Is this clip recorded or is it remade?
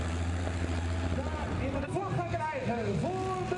recorded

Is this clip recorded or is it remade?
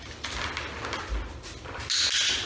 recorded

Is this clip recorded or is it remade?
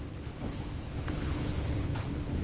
remade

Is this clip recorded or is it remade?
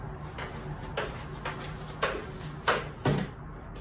recorded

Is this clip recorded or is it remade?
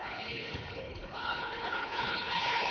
remade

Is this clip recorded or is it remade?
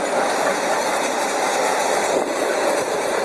recorded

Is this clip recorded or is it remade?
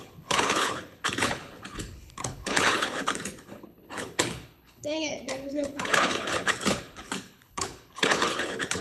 remade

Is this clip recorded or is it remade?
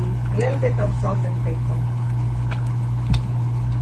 remade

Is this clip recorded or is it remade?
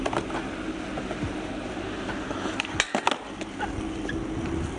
recorded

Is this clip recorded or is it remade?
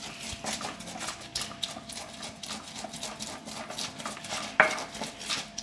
recorded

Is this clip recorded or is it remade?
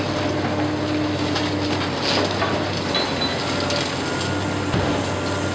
recorded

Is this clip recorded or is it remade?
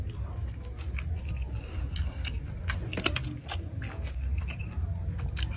recorded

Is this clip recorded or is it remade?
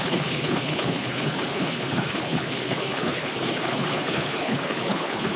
remade